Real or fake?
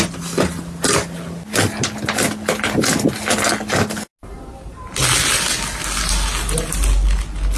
real